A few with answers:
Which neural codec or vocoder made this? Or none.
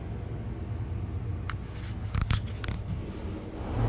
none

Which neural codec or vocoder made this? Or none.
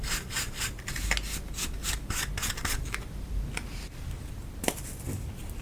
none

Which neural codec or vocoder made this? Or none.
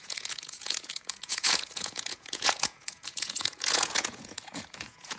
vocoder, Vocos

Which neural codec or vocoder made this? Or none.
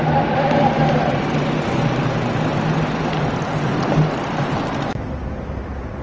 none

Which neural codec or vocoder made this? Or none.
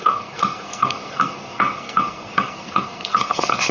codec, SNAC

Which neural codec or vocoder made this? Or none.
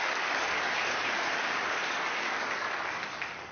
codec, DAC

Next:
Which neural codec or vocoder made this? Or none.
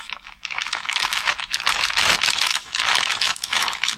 autoencoder, DAC-VAE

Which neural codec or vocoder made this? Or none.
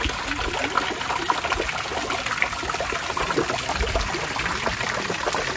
none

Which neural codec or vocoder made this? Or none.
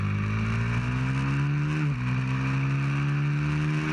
none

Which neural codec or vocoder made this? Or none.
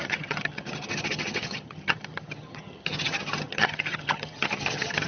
vocoder, HiFi-GAN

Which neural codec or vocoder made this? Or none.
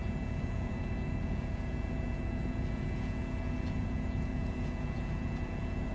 vocoder, Vocos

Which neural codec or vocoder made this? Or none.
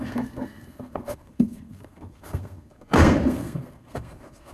codec, SNAC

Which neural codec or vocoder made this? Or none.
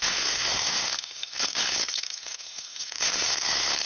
codec, SNAC